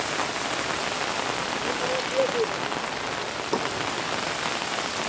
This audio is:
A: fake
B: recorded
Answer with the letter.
B